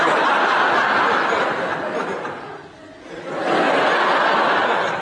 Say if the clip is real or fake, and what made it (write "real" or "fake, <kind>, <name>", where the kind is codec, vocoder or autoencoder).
real